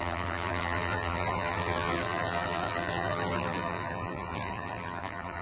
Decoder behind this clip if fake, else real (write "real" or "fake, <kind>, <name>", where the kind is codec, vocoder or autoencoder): fake, vocoder, BigVGAN v2